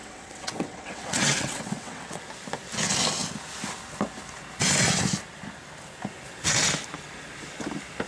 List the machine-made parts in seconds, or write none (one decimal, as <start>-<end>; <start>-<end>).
0.0-2.2